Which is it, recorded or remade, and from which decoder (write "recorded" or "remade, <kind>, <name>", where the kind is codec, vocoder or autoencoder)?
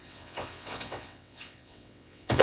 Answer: remade, vocoder, WaveNeXt